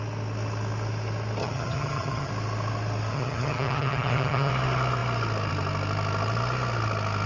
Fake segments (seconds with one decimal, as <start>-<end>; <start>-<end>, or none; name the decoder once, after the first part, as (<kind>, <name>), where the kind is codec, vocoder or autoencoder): 1.4-2.3 (vocoder, HiFi-GAN); 3.1-4.5